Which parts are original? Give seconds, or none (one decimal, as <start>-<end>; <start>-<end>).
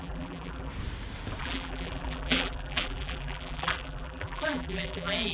0.7-1.4